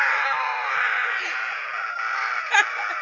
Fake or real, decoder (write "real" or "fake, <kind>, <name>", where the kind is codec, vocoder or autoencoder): real